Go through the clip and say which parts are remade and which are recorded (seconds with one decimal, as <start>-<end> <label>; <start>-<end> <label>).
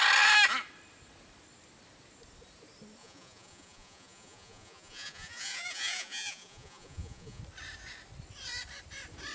0.0-3.0 recorded; 3.0-7.4 remade; 7.4-9.3 recorded